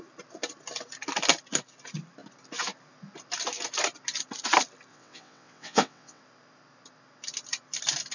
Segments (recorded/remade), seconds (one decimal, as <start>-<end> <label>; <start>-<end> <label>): 0.0-4.9 recorded; 4.9-6.2 remade; 6.2-8.1 recorded